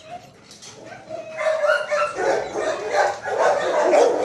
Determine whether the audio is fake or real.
real